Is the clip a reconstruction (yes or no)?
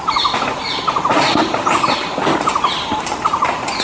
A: no